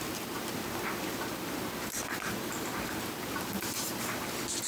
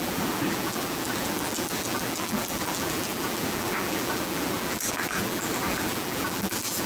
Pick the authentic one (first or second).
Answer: first